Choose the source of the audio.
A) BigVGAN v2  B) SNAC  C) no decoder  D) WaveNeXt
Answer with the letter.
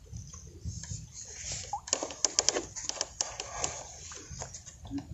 C